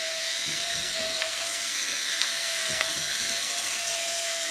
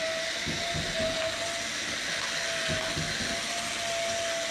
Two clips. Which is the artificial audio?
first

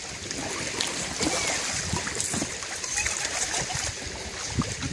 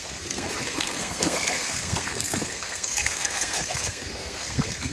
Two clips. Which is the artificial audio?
second